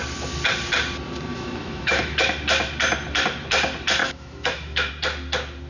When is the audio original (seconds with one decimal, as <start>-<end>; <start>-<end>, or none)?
0.0-1.3; 2.2-4.0; 4.9-5.7